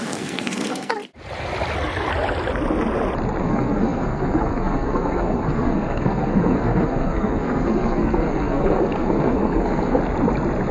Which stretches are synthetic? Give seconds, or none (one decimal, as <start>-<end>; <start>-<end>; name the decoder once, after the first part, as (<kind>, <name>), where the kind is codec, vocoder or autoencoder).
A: 0.0-1.0 (codec, SNAC); 3.4-10.0

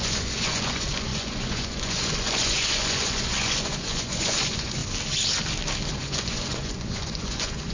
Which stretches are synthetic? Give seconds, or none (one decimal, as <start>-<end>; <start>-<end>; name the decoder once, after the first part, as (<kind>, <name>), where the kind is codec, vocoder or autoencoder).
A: 0.0-4.8 (vocoder, Vocos); 5.9-7.7

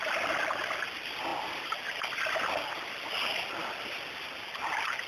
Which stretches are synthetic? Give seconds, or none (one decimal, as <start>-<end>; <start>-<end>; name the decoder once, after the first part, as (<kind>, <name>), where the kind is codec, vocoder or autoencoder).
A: none

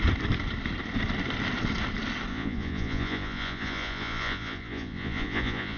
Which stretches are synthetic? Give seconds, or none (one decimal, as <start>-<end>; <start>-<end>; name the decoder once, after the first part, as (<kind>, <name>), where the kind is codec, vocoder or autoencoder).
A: 2.3-5.8 (vocoder, Vocos)